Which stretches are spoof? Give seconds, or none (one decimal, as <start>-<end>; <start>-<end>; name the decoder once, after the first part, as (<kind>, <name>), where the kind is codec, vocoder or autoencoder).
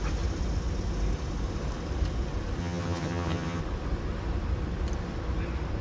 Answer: 2.6-3.6 (vocoder, HiFi-GAN)